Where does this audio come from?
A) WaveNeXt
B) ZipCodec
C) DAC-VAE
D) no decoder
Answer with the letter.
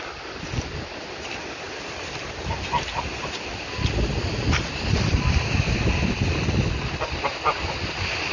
D